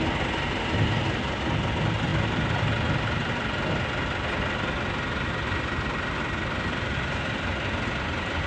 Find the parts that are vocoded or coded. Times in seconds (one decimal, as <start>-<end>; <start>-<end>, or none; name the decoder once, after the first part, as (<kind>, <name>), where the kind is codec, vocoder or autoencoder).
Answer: none